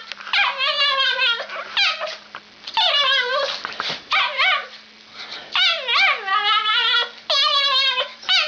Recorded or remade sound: recorded